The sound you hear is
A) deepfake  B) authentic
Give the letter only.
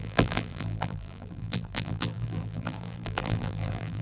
A